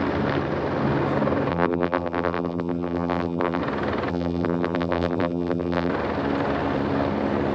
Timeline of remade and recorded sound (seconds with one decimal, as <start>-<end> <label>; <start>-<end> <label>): 0.0-1.5 recorded; 1.5-3.6 remade; 3.6-4.1 recorded; 4.1-5.9 remade; 5.9-7.5 recorded